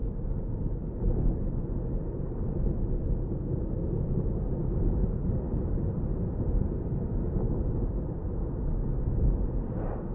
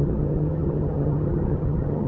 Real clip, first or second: first